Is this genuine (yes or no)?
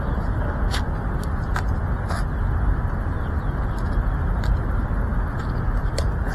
yes